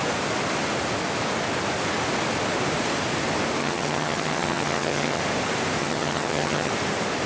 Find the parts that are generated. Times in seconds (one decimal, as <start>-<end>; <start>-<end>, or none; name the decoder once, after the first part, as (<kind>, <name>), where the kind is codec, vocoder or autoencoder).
3.6-5.2 (vocoder, HiFi-GAN); 5.8-6.7